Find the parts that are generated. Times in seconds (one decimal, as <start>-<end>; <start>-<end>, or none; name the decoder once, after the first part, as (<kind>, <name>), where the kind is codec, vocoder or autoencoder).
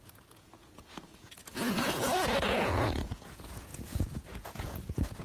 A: 0.0-5.2 (vocoder, Vocos)